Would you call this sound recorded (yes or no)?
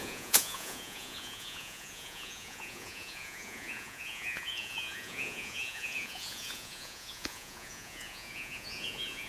no